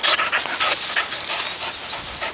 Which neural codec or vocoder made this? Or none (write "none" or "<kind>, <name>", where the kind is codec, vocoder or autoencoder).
none